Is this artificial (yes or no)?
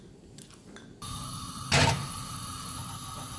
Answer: no